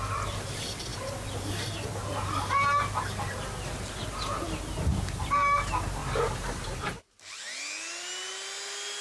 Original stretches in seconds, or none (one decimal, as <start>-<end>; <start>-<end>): 0.0-6.0; 7.0-9.0